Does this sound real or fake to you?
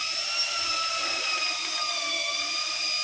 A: real